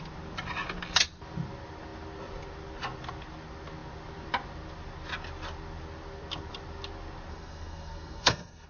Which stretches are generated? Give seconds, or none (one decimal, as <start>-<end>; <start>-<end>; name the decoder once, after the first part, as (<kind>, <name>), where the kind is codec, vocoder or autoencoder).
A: 7.3-8.7 (codec, SNAC)